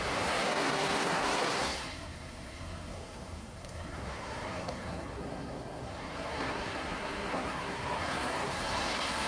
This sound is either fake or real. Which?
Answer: fake